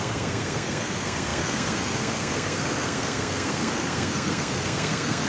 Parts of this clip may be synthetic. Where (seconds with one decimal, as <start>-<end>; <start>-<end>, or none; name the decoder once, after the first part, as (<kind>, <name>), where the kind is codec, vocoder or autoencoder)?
0.0-5.3 (codec, SNAC)